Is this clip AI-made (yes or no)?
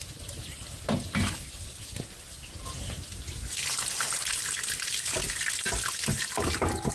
no